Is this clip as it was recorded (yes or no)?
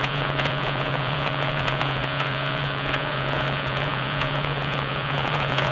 no